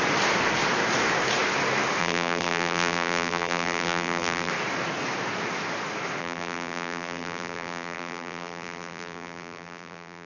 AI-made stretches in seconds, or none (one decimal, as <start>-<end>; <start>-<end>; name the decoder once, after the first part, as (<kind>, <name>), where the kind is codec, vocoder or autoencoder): 2.0-4.5 (vocoder, BigVGAN v2); 6.2-10.3